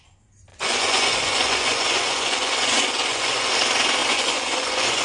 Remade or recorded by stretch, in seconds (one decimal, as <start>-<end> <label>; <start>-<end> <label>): 0.0-0.5 recorded; 0.5-3.5 remade; 3.5-4.0 recorded; 4.0-5.0 remade